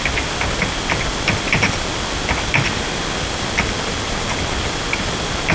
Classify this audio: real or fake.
real